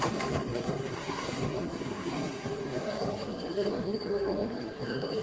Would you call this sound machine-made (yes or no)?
yes